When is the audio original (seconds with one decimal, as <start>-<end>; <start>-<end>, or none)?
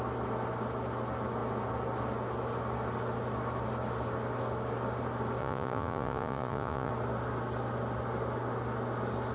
0.0-5.4; 6.9-9.3